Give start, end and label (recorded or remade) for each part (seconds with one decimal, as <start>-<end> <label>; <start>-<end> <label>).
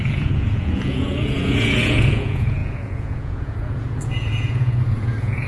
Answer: 0.0-5.5 remade